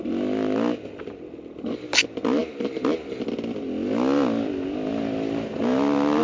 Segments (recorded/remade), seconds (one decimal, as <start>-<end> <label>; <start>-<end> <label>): 0.0-6.2 recorded